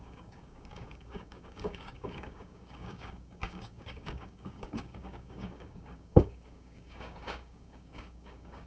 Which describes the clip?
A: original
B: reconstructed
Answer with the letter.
B